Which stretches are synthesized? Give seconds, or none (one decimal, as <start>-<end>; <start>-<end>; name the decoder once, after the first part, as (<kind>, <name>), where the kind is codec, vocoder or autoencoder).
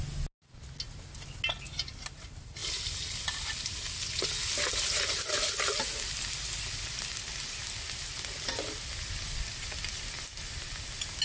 none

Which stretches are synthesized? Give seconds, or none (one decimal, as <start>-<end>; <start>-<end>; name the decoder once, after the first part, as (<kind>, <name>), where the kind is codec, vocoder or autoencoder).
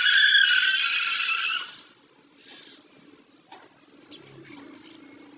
none